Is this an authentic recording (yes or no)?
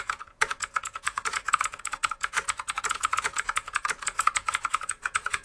no